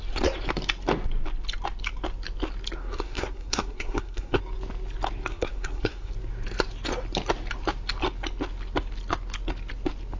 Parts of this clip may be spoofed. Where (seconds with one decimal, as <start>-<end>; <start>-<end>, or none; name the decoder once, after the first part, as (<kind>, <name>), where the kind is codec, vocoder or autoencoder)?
2.8-4.4 (codec, SNAC); 5.3-6.1